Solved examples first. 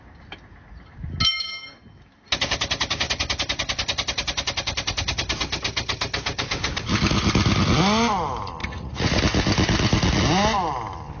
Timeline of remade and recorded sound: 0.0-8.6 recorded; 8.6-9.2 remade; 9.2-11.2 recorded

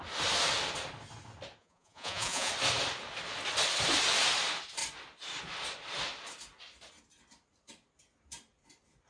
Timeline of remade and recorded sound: 0.0-1.6 recorded; 1.6-2.5 remade; 2.5-9.1 recorded

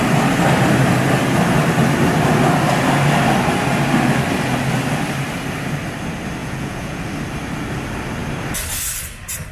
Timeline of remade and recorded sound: 0.0-6.4 recorded; 6.4-7.0 remade; 7.0-9.5 recorded

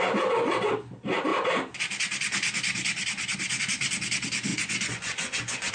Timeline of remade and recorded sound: 0.0-4.5 recorded; 4.5-5.7 remade

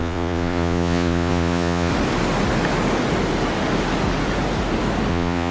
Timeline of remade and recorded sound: 0.0-1.9 remade; 1.9-5.1 recorded; 5.1-5.5 remade

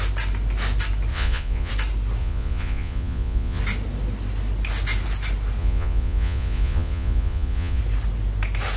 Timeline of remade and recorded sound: 0.0-1.1 recorded; 1.1-1.7 remade; 1.7-2.2 recorded; 2.2-3.6 remade; 3.6-5.6 recorded; 5.6-7.8 remade; 7.8-8.8 recorded

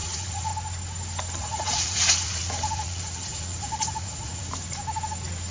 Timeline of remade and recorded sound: 0.0-0.5 remade; 0.5-1.4 recorded; 1.4-4.4 remade; 4.4-5.5 recorded